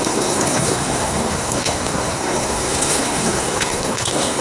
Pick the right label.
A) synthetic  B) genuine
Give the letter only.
A